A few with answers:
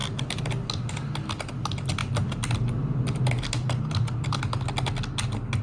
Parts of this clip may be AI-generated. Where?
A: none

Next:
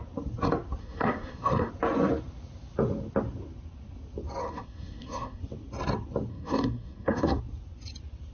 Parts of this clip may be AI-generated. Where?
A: 0.8-1.7 (codec, SNAC); 4.4-5.4; 6.3-7.4

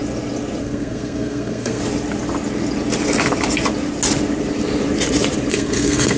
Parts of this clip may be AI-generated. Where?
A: 0.6-1.8 (codec, SNAC); 5.5-6.2

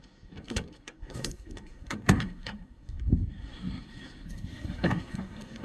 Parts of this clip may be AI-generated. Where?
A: 0.0-5.6 (codec, SNAC)